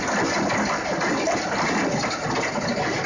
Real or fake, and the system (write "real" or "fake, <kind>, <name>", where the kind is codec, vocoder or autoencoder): real